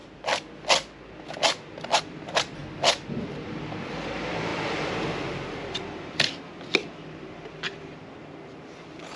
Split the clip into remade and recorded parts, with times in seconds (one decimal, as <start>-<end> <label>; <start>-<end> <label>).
0.0-2.0 recorded; 2.0-2.6 remade; 2.6-3.2 recorded; 3.2-9.2 remade